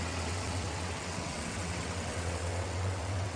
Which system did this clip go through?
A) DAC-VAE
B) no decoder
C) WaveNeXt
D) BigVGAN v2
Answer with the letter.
C